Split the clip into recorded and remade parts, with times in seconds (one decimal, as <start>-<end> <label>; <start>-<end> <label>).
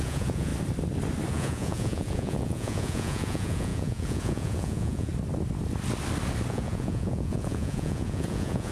0.0-0.5 remade; 0.5-1.3 recorded; 1.3-5.1 remade; 5.1-6.5 recorded; 6.5-8.7 remade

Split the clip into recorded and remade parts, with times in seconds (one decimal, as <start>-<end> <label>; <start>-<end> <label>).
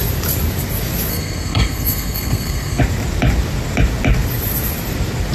0.0-1.1 recorded; 1.1-2.8 remade; 2.8-5.3 recorded